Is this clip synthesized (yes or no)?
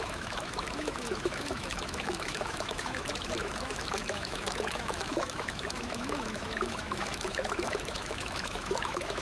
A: yes